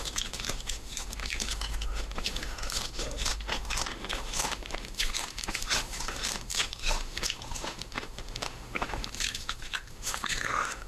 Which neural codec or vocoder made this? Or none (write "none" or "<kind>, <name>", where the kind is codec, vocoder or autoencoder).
autoencoder, DAC-VAE